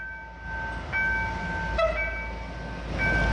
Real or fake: real